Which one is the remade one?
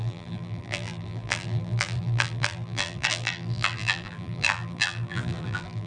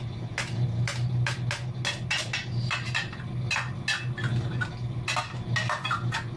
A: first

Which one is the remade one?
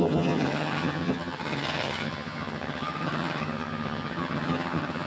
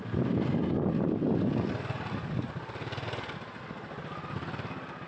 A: first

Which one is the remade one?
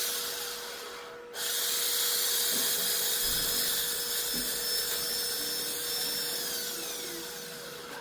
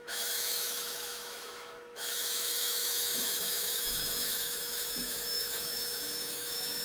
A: second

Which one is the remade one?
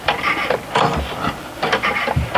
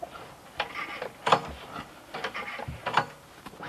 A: first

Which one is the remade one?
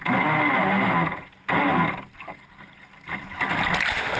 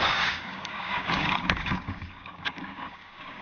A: second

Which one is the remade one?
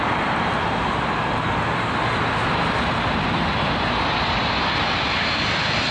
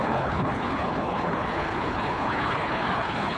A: second